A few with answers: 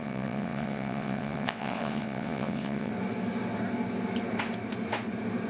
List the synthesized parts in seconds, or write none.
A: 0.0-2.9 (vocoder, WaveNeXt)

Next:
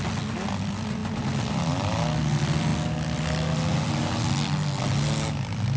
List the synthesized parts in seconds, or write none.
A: none

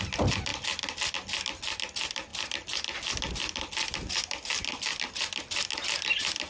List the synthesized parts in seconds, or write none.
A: none

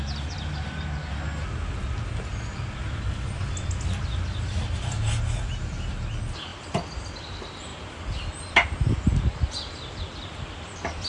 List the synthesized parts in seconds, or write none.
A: none

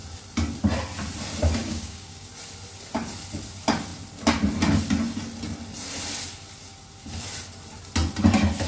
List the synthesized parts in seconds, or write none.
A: 1.6-2.3 (codec, DAC)

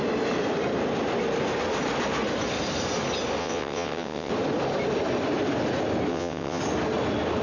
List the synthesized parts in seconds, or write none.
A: 3.4-4.3 (vocoder, WaveNeXt); 6.1-6.6